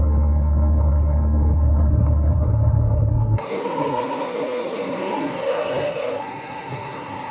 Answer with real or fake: fake